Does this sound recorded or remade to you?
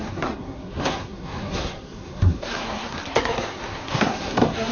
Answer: remade